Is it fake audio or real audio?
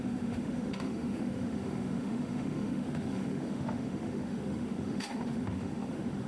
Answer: fake